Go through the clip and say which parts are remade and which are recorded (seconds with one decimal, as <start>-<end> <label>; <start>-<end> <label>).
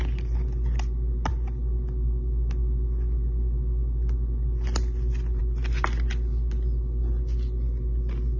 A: 0.0-8.4 recorded